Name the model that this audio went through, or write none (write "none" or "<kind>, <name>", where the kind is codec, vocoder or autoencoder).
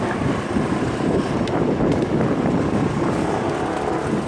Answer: none